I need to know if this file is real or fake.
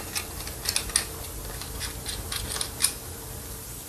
real